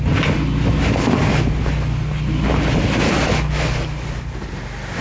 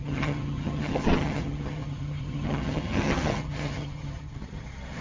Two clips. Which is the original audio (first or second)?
first